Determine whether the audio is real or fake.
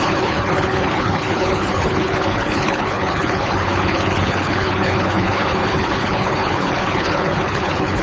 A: fake